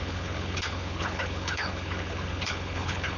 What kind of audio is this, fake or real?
fake